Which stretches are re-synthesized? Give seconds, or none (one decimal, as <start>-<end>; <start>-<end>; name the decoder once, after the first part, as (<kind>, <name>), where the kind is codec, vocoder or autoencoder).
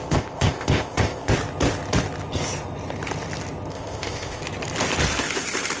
0.0-1.3 (codec, ZipCodec); 3.7-4.4